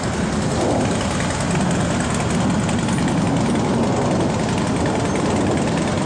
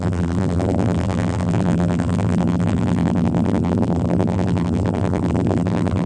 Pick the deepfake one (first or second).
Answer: second